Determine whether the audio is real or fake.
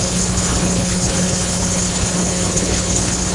fake